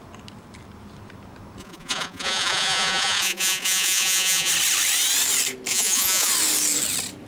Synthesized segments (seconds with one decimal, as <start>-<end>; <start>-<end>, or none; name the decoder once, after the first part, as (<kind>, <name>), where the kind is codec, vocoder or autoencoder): 1.6-4.5 (vocoder, Vocos); 5.7-6.3